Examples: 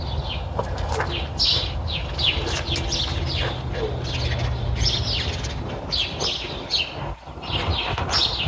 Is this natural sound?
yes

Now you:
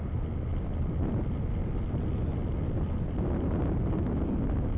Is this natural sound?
yes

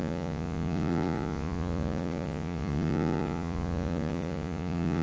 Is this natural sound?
no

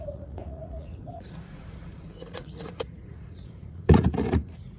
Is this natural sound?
no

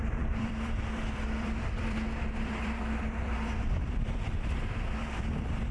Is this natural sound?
no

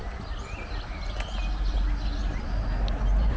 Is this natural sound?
yes